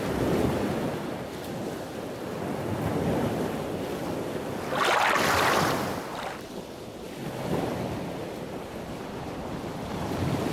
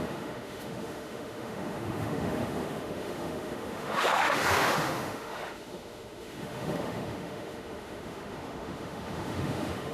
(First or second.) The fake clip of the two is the second